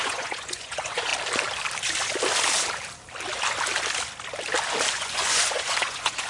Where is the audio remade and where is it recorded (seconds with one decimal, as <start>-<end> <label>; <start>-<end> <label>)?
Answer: 0.0-1.1 remade; 1.1-4.9 recorded; 4.9-6.3 remade